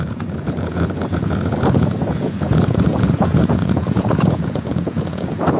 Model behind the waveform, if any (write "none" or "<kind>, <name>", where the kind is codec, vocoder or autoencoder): vocoder, Vocos